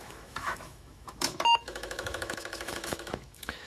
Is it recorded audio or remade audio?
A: remade